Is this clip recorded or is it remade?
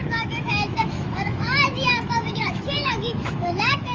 remade